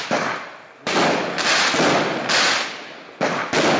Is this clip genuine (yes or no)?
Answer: yes